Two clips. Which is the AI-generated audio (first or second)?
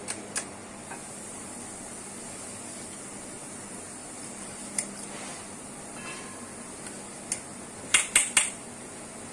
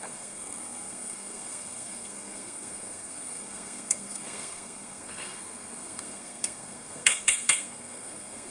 second